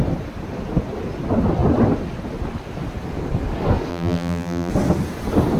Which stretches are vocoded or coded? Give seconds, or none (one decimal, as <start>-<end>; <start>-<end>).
3.9-4.7